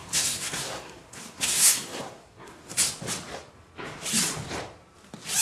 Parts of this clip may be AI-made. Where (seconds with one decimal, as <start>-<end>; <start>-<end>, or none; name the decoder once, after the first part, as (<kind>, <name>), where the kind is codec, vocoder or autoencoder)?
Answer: 0.0-2.9 (codec, SNAC)